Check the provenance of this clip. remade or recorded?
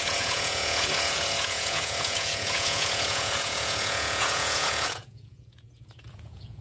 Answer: remade